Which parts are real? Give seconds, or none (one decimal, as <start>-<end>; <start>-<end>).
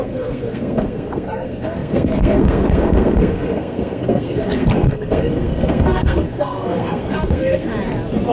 7.7-8.3